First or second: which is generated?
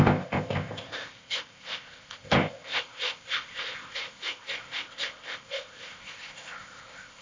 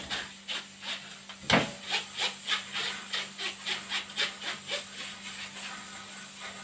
first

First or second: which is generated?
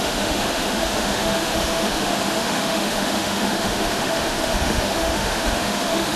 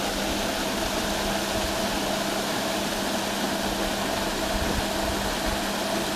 first